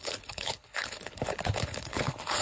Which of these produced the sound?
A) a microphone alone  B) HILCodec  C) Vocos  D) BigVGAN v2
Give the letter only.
B